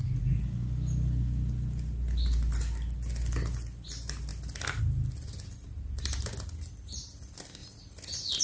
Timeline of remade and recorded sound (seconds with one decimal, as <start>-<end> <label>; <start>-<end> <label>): 0.0-8.4 recorded

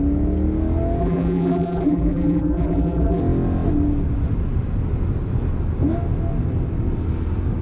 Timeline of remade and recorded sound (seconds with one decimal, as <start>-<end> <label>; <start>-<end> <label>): 0.0-1.0 recorded; 1.0-3.2 remade; 3.2-7.6 recorded

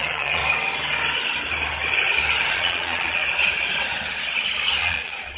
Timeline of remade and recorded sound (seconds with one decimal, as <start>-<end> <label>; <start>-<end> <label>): 0.0-0.4 remade; 0.4-2.5 recorded; 2.5-3.2 remade; 3.2-4.8 recorded; 4.8-5.4 remade

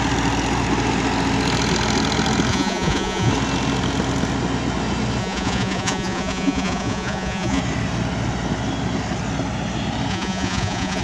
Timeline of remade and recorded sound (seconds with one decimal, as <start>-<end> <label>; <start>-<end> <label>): 0.0-2.5 recorded; 2.5-3.3 remade; 3.3-5.2 recorded; 5.2-7.6 remade; 7.6-10.1 recorded; 10.1-11.0 remade